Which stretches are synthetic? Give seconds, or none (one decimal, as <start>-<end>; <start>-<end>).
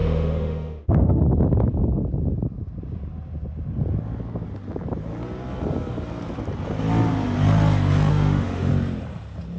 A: 0.0-1.2; 8.1-8.7